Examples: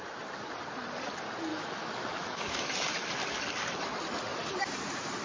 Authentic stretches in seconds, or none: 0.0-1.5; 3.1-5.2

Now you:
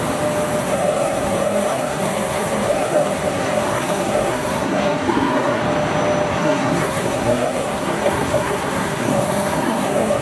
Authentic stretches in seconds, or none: 0.0-0.6; 5.6-6.3